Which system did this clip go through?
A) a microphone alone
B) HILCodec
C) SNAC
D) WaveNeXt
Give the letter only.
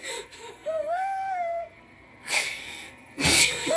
C